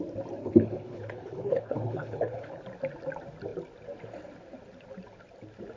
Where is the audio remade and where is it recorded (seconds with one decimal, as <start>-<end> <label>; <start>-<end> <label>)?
0.0-0.4 recorded; 0.4-2.6 remade; 2.6-5.8 recorded